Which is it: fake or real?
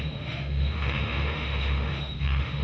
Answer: fake